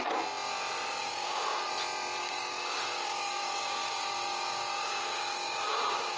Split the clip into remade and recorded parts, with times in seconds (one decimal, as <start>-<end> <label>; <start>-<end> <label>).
0.0-1.0 recorded; 1.0-1.7 remade; 1.7-2.2 recorded; 2.2-6.2 remade